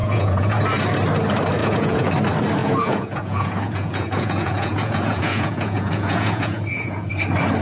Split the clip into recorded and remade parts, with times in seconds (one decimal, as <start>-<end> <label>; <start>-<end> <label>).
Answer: 0.0-0.6 remade; 0.6-1.6 recorded; 1.6-2.1 remade; 2.1-2.6 recorded; 2.6-7.1 remade; 7.1-7.6 recorded